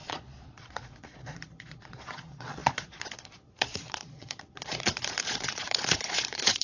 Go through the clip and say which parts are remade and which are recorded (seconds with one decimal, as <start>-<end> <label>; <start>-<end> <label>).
0.0-6.6 remade